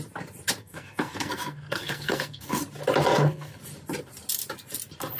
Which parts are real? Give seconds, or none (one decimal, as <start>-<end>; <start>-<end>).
0.0-0.6; 2.6-3.1; 3.6-5.2